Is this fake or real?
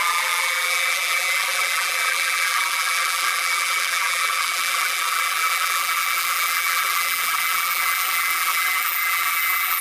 fake